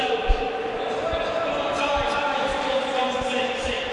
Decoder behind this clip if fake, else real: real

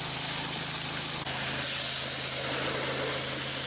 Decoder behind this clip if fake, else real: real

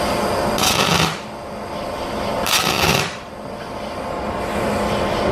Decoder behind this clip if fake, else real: fake, vocoder, BigVGAN v2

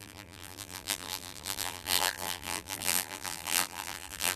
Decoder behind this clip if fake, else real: fake, vocoder, BigVGAN v2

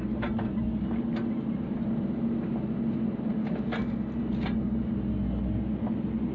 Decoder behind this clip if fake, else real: real